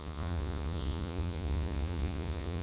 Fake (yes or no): yes